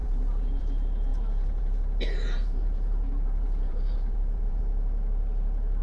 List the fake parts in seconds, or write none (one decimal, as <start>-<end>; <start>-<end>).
0.0-0.6; 1.1-4.6